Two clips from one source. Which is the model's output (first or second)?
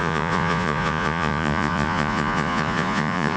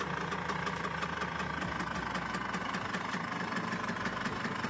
first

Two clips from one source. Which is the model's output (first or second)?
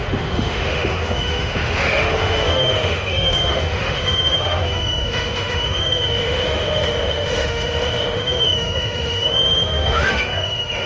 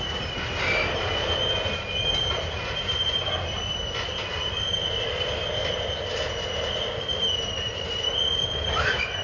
first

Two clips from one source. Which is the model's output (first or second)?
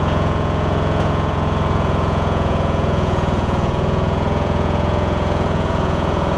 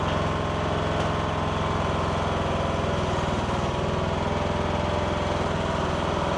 first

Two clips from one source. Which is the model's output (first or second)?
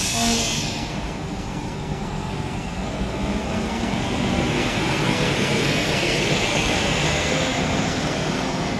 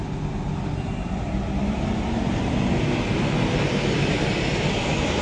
first